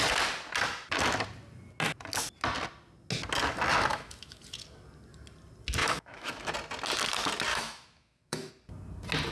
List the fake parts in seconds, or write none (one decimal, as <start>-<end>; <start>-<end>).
3.9-4.4; 5.8-6.5; 7.5-8.5